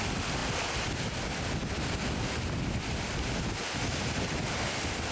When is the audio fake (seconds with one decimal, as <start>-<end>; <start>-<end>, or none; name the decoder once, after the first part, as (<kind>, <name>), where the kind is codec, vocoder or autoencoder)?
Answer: none

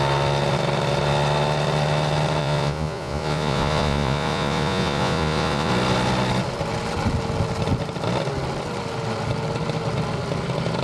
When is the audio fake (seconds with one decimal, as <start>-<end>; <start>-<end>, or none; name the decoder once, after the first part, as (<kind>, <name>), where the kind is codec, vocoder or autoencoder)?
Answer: 2.4-5.7 (vocoder, Vocos)

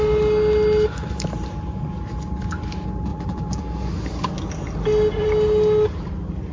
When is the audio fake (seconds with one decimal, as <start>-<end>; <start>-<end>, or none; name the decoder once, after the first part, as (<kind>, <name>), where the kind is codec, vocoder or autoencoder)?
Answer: 3.1-3.6 (vocoder, BigVGAN v2)

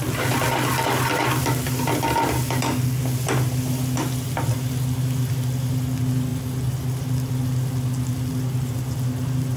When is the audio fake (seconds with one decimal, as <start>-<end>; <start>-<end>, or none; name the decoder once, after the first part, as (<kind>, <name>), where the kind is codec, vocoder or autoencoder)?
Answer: none

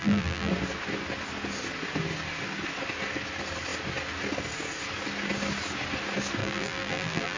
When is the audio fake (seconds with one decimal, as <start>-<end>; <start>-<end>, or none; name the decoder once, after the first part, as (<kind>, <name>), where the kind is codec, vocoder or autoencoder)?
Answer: 0.0-0.5 (vocoder, BigVGAN v2); 6.4-7.4

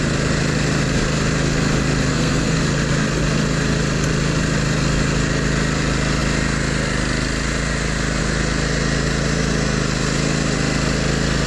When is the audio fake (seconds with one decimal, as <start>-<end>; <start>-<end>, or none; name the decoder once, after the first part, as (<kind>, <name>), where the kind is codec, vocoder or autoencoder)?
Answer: 2.1-2.6 (codec, SNAC)